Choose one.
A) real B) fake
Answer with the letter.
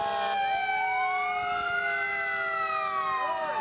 A